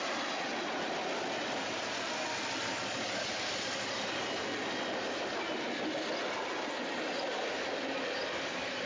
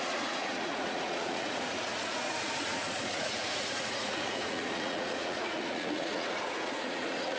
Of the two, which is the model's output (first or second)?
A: second